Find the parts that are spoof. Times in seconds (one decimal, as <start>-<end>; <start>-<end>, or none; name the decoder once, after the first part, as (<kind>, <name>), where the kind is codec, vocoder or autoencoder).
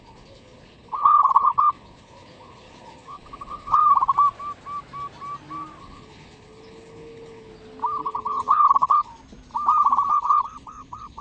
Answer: 0.0-3.8 (codec, HILCodec); 5.8-7.5; 8.0-9.1; 10.1-11.2